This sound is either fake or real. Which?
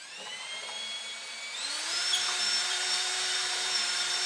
fake